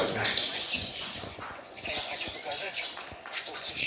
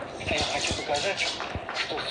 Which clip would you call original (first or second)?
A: second